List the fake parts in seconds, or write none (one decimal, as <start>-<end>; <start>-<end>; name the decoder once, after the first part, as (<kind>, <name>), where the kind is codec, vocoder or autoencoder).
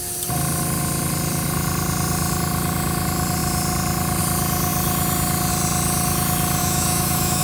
6.6-7.4 (autoencoder, DAC-VAE)